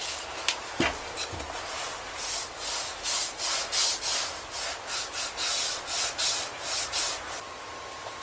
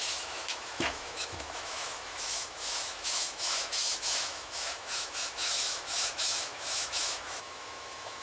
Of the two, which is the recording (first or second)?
first